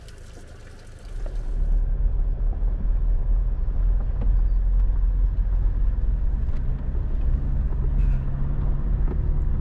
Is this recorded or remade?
recorded